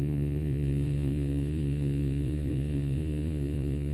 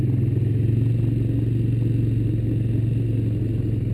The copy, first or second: first